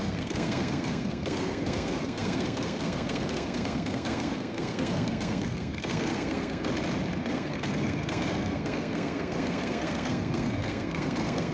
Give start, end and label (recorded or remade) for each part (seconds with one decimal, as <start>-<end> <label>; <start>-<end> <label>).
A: 0.0-6.7 remade; 6.7-7.2 recorded; 7.2-11.5 remade